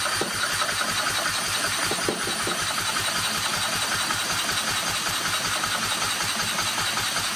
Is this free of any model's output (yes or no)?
yes